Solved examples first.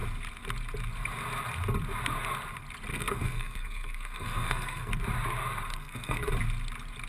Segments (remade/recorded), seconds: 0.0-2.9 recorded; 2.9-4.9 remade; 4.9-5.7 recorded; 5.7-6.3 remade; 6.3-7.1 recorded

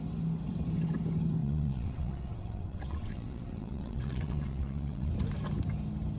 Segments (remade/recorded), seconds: 0.0-1.4 recorded; 1.4-5.1 remade; 5.1-6.2 recorded

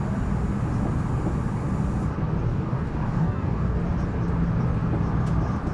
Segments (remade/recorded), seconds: 0.0-2.5 recorded; 2.5-3.8 remade; 3.8-5.7 recorded